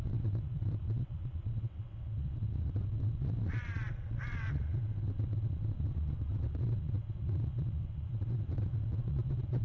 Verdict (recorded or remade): remade